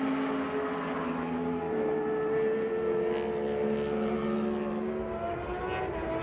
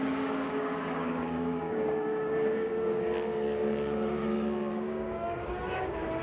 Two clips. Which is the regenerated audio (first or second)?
second